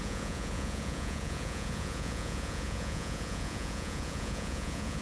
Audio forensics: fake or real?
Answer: fake